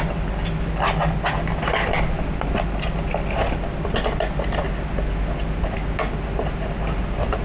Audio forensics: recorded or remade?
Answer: recorded